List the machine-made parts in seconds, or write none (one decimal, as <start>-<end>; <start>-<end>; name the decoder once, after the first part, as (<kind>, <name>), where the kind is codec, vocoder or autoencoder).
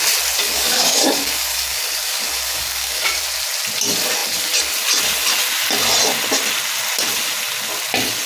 0.4-3.2 (codec, DAC)